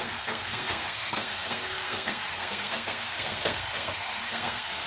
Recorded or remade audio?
remade